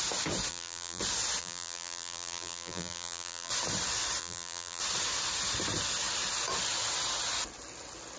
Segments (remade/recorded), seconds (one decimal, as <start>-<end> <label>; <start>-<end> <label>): 0.0-0.5 recorded; 0.5-1.0 remade; 1.0-1.4 recorded; 1.4-3.5 remade; 3.5-4.2 recorded; 4.2-4.8 remade; 4.8-8.2 recorded